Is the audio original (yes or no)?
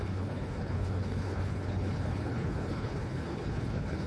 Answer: no